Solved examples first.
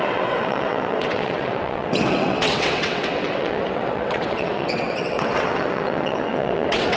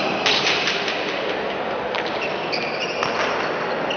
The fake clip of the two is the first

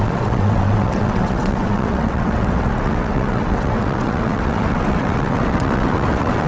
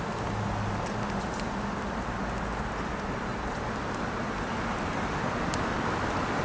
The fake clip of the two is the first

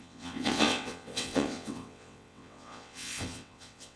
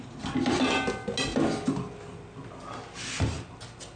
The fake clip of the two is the first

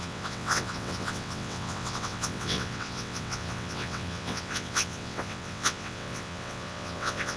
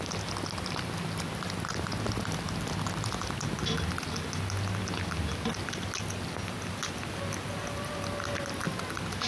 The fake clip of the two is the first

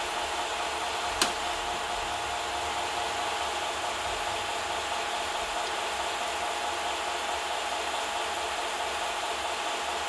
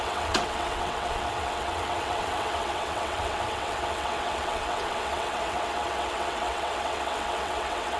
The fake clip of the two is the second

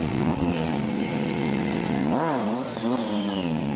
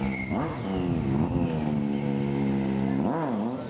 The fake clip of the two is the first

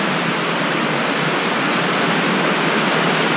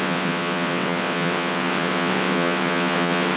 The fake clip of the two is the second